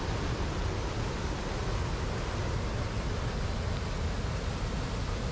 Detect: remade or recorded recorded